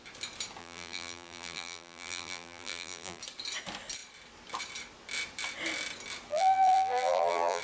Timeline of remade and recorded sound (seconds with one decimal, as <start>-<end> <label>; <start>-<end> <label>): 0.0-0.6 recorded; 0.6-3.2 remade; 3.2-6.3 recorded; 6.3-7.6 remade